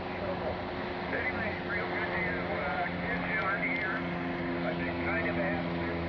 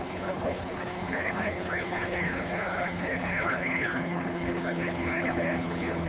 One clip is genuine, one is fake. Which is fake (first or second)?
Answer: second